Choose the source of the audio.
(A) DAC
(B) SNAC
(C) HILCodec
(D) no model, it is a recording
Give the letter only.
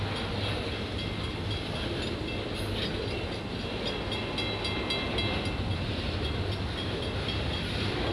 D